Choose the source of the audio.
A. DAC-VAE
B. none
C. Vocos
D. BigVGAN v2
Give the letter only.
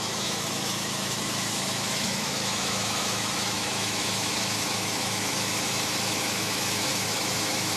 A